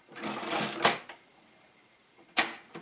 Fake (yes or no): no